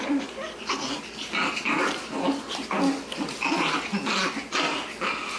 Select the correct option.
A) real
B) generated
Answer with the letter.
A